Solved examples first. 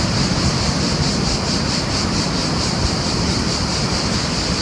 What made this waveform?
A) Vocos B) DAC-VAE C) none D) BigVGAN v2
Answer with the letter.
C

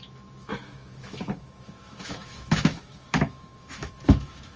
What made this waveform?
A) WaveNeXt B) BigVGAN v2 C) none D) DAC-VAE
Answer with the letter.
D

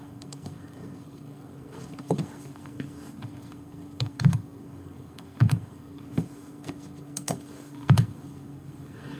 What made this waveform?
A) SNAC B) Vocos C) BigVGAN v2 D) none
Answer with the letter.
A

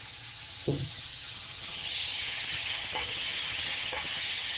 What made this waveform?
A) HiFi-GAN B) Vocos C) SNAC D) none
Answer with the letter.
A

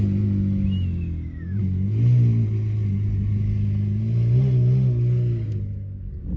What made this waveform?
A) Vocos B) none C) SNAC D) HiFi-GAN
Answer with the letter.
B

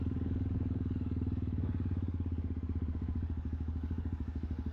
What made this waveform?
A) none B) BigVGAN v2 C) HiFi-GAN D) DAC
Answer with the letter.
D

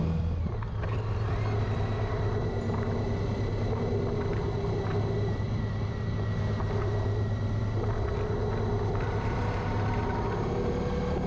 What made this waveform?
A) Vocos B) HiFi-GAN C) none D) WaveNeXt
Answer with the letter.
C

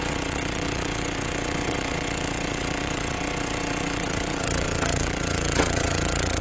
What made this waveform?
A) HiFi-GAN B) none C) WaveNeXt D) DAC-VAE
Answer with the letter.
C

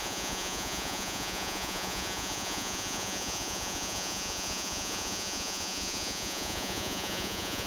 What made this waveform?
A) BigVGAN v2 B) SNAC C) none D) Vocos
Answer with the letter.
D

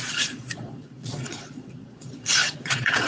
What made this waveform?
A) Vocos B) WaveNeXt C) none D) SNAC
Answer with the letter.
A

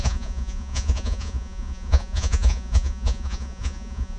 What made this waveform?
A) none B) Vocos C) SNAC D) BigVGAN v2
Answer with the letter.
B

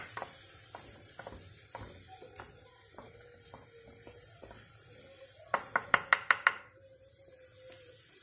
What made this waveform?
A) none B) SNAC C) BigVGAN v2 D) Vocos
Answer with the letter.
A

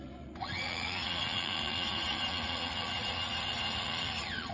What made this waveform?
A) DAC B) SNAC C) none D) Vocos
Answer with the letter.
D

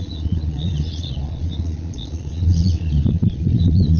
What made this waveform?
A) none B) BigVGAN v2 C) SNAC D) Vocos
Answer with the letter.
D